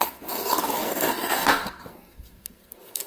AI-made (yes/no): yes